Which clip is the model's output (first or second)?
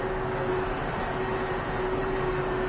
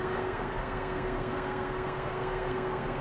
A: second